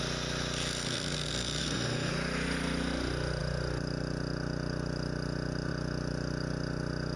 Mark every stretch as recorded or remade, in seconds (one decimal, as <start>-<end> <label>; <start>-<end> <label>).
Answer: 0.0-1.6 recorded; 1.6-2.1 remade; 2.1-7.2 recorded